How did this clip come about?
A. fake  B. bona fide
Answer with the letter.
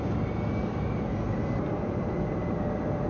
B